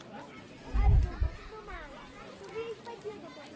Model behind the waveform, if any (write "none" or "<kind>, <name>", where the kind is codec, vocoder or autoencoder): none